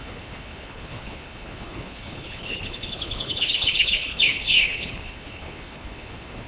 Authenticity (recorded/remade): remade